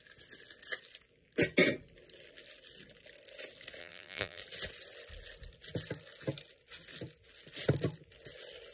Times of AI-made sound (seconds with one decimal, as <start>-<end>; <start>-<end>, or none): 3.8-4.4

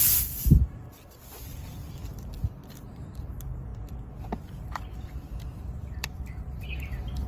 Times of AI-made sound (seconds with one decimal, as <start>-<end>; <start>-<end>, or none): 0.0-3.7; 4.4-7.3

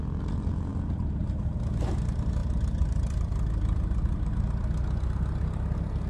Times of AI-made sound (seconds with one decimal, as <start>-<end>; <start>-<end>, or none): 2.4-4.4

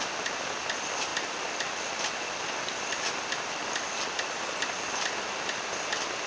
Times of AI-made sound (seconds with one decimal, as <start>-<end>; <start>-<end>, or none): none

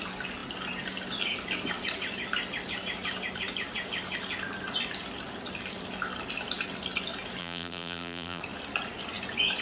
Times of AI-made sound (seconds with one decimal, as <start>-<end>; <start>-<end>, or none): 7.4-8.4

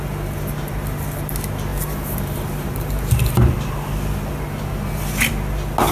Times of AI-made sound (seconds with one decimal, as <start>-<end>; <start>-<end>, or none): 1.7-3.9

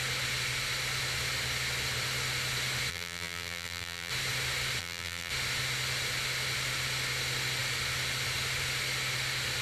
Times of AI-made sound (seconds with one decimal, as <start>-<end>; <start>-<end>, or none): 2.9-4.1; 4.8-5.3

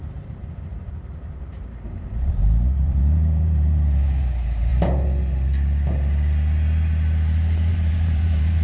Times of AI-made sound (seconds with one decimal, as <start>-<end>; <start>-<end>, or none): 0.0-4.7; 7.7-8.6